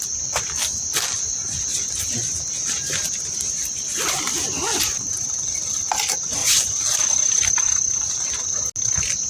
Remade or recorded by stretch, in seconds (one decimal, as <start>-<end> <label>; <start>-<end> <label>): 0.0-9.3 recorded